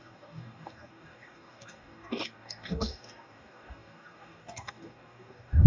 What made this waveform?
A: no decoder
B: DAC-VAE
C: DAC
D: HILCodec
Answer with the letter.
C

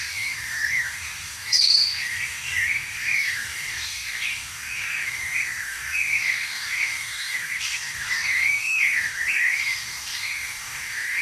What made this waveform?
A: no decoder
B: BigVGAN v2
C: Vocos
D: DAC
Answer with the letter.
D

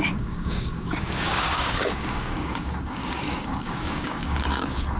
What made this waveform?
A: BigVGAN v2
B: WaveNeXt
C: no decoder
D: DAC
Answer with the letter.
D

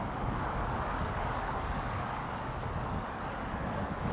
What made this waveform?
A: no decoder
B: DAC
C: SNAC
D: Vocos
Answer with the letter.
B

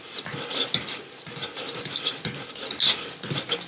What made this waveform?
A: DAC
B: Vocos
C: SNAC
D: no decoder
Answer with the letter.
D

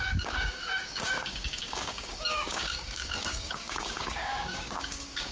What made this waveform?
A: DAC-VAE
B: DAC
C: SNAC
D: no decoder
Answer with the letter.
B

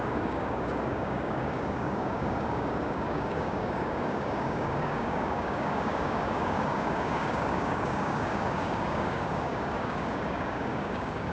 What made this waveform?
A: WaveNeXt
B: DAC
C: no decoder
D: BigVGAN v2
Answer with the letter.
B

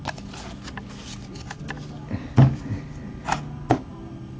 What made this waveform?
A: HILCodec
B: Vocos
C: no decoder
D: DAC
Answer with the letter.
C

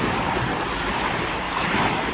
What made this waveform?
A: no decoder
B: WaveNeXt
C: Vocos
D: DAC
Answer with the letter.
A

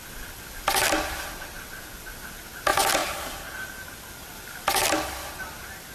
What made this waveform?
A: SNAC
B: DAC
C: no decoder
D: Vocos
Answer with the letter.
C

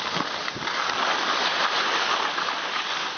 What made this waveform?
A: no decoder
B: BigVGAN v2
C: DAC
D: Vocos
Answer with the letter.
A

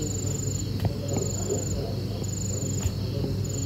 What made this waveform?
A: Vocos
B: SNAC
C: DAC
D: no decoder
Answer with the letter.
D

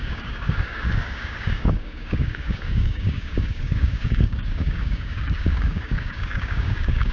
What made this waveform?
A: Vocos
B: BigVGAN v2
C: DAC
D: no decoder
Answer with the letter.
C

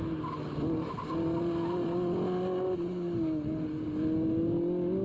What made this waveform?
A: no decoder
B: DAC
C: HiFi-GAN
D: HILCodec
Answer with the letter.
A